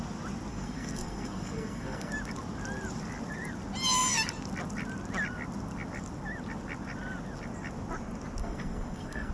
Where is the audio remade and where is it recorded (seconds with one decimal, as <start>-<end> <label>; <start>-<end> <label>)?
0.0-0.5 recorded; 0.5-2.1 remade; 2.1-8.4 recorded; 8.4-9.3 remade